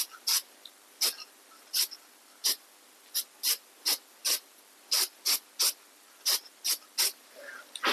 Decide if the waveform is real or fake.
real